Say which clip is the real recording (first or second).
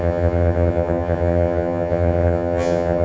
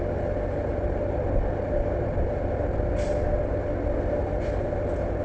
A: second